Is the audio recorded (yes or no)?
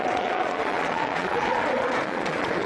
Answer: no